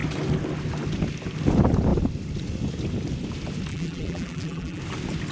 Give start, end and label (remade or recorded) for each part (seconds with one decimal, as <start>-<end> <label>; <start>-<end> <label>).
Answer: 0.0-3.7 recorded; 3.7-4.8 remade; 4.8-5.3 recorded